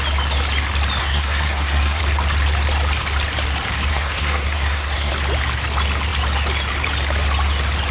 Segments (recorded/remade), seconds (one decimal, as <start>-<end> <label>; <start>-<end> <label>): 0.0-1.0 recorded; 1.0-2.0 remade; 2.0-3.9 recorded; 3.9-5.1 remade; 5.1-7.9 recorded